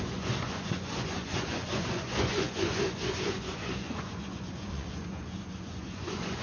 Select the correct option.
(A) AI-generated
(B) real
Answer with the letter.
A